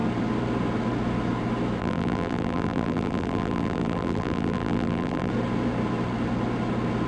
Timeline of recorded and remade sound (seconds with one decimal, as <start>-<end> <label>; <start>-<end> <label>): 0.0-1.8 recorded; 1.8-5.3 remade; 5.3-7.1 recorded